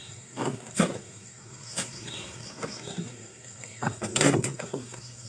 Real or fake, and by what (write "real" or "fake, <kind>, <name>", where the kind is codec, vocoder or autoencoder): fake, codec, SNAC